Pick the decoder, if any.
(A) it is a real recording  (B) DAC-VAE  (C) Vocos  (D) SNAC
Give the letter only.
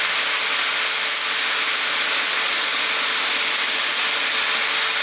A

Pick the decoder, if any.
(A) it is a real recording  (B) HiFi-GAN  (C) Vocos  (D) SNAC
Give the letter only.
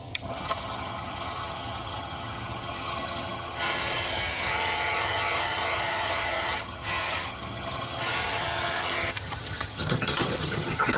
B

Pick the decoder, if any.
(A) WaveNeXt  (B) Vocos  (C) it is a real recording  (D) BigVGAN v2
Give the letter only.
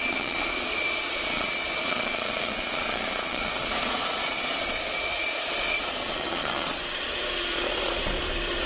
B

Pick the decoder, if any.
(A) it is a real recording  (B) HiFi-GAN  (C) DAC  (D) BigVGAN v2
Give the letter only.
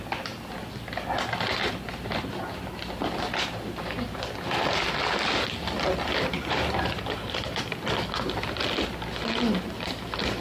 A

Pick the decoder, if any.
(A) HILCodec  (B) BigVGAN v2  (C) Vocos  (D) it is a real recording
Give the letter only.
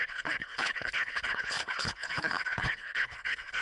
A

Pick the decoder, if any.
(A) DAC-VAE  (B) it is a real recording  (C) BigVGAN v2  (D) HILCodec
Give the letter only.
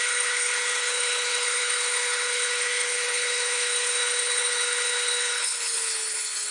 D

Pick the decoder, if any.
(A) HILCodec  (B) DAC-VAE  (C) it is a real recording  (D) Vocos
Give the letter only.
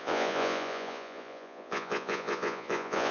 D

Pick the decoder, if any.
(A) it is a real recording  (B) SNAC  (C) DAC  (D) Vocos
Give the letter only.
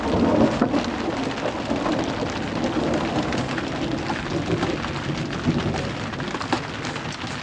A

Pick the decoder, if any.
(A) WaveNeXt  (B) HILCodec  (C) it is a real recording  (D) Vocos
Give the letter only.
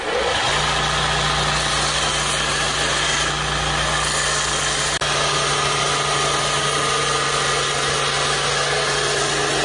C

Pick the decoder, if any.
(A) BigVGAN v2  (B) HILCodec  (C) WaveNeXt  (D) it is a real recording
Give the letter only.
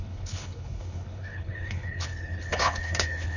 B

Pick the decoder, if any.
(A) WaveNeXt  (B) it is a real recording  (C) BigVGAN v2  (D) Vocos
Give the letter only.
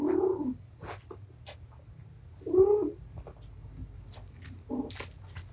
B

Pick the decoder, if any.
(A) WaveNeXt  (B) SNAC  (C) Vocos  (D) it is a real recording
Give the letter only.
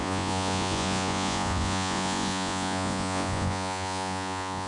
C